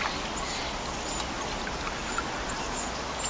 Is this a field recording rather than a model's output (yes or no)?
yes